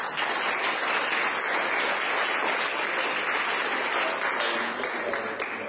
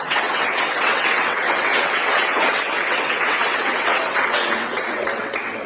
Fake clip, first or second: second